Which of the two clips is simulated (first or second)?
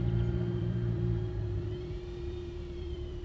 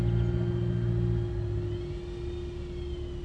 first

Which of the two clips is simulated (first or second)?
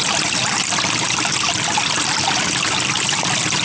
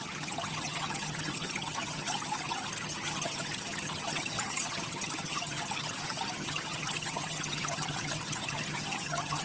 second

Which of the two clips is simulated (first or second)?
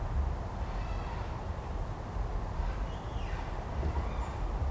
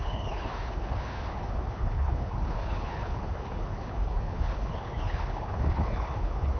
second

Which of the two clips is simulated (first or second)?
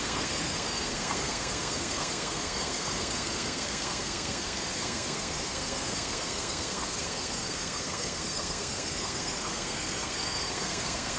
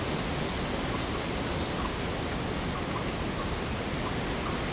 first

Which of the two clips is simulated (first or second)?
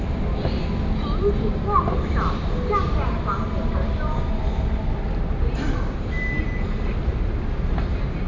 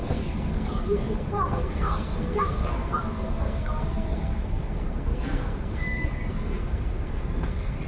second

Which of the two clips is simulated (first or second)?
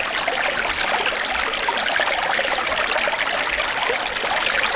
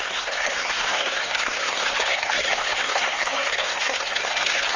second